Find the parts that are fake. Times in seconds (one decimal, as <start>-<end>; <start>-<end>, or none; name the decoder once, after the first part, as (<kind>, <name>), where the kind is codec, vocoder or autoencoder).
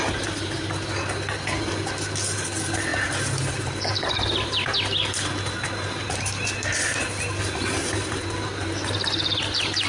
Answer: none